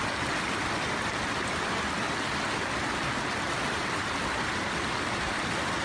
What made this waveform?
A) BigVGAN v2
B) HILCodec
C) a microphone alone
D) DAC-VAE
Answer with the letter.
C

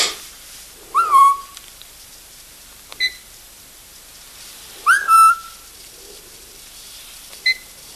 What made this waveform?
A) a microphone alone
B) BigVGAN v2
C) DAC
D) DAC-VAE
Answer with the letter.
B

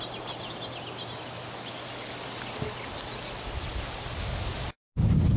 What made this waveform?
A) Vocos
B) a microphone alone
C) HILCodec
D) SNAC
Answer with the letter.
B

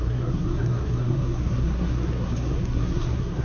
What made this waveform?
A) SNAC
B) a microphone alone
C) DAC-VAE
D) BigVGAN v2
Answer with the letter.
A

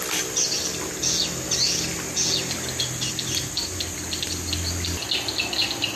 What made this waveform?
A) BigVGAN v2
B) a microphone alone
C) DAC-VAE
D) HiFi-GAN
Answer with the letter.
B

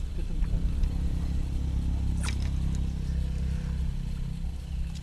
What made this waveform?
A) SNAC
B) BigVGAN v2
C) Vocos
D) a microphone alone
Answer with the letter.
D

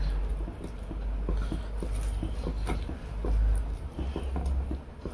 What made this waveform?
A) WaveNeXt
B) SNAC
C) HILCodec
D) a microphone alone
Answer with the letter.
D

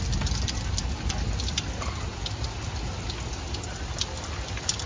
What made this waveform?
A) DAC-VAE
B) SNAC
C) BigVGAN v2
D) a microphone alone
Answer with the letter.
D